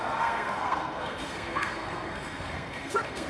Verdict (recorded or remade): remade